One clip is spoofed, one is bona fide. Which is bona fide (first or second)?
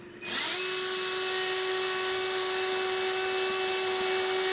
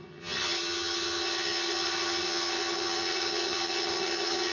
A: first